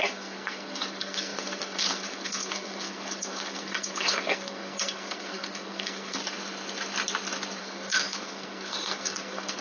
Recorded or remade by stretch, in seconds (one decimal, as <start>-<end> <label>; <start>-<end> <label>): 0.0-6.2 remade; 6.2-7.6 recorded; 7.6-9.6 remade